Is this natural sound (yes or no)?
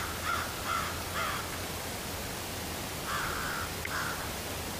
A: yes